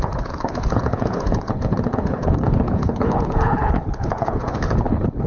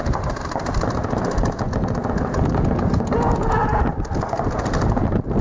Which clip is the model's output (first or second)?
first